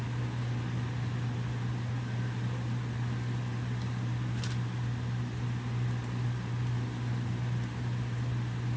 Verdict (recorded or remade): recorded